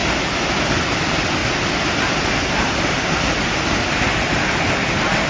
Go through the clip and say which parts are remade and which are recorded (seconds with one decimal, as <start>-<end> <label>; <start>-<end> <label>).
0.0-1.4 recorded; 1.4-3.2 remade; 3.2-5.3 recorded